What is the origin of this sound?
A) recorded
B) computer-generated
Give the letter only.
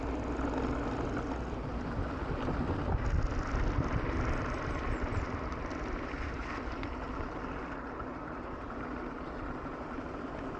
A